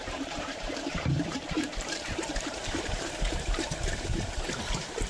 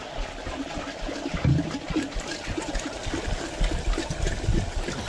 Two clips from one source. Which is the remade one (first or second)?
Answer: first